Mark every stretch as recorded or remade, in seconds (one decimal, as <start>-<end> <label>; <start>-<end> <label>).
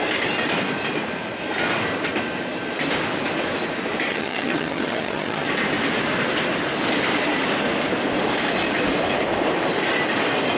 0.0-4.1 recorded; 4.1-5.5 remade; 5.5-10.6 recorded